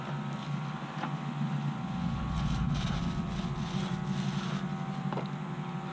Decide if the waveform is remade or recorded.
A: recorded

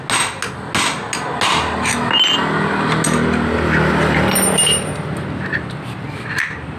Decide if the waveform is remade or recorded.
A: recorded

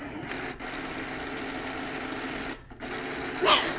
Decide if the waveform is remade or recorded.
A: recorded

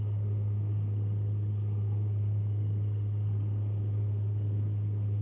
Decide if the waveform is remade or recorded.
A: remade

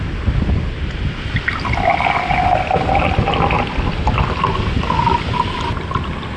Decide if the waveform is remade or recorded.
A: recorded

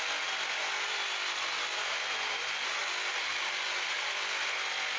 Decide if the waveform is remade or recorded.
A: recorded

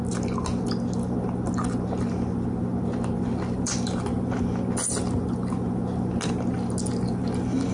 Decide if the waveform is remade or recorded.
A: recorded